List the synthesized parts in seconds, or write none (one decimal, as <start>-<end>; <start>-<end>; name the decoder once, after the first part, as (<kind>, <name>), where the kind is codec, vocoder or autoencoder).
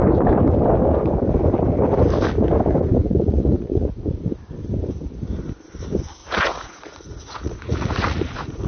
3.0-4.2 (vocoder, Vocos); 6.2-8.7